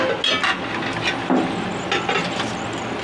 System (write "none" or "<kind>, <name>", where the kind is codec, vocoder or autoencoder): none